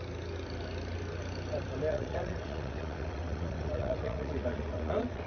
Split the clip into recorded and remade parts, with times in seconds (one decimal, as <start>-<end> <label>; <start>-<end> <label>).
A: 0.0-1.9 recorded; 1.9-5.3 remade